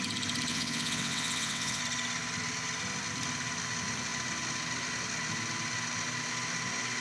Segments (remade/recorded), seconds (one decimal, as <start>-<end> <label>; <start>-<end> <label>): 0.0-0.5 recorded; 0.5-1.8 remade; 1.8-7.0 recorded